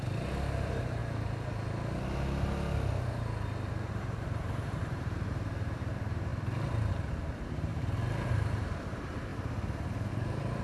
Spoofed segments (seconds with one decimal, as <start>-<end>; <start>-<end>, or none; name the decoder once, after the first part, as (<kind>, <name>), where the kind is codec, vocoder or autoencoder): 0.0-1.0 (vocoder, BigVGAN v2); 3.9-6.3; 6.9-7.7; 8.3-9.3; 10.1-10.6

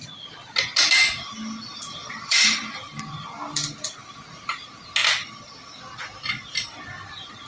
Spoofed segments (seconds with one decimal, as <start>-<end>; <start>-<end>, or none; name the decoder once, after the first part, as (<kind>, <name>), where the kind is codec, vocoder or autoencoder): 1.9-2.6 (vocoder, BigVGAN v2)

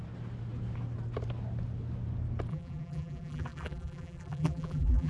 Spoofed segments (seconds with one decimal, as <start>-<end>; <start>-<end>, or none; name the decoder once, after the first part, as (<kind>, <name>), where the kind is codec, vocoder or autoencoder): 2.5-5.1 (vocoder, BigVGAN v2)

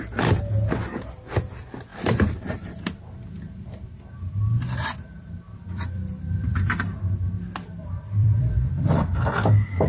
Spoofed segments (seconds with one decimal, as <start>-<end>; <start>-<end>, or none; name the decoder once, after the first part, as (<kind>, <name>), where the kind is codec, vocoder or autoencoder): 1.9-6.7 (vocoder, BigVGAN v2); 8.2-8.9

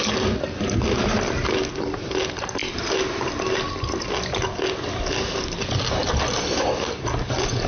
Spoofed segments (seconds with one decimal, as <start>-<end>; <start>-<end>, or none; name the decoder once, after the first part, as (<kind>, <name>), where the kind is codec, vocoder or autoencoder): 2.6-3.3 (vocoder, BigVGAN v2); 6.0-6.6